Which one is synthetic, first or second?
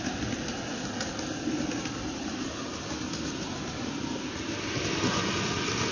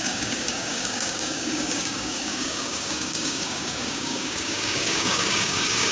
second